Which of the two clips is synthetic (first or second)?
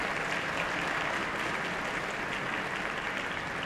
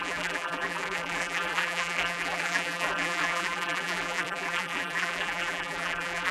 second